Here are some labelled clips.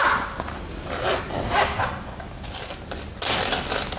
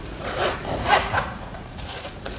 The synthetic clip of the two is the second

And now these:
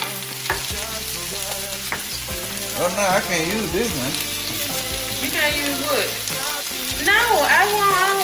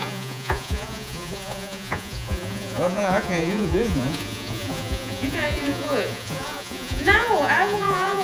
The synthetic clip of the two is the second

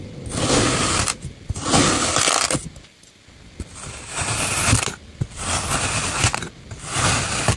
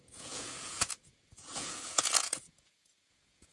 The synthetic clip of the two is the second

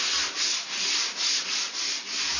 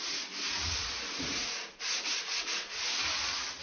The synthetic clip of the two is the second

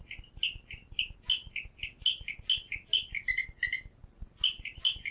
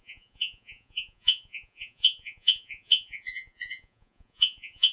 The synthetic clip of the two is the second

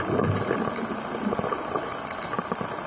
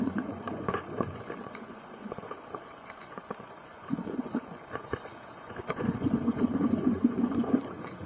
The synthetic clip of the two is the second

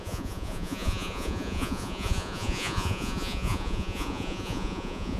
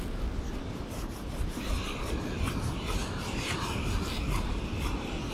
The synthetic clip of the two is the first